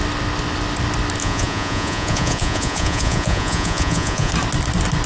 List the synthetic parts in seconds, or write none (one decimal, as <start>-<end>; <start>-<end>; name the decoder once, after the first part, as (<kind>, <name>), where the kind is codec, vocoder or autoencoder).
1.2-4.3 (vocoder, Vocos)